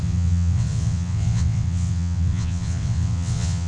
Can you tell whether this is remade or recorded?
remade